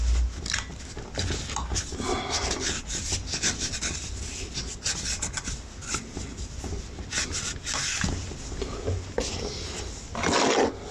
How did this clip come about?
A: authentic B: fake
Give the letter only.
A